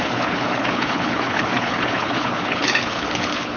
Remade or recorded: remade